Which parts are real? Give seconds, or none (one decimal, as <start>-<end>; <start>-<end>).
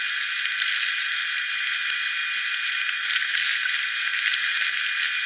0.0-5.3